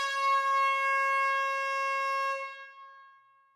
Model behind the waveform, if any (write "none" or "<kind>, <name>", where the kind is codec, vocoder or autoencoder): none